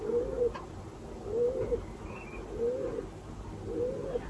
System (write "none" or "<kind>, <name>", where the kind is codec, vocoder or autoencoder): none